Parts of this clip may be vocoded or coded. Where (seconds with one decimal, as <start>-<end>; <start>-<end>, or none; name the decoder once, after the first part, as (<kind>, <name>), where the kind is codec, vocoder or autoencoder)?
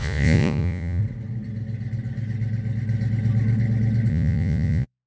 0.0-1.0 (vocoder, Vocos); 4.1-5.1